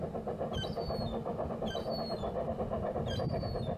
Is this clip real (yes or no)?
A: yes